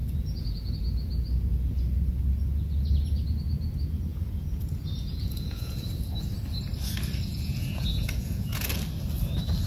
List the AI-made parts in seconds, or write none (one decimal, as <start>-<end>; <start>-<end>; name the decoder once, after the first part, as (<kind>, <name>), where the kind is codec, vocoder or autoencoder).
0.0-0.7 (vocoder, Vocos); 4.1-5.8; 7.3-8.7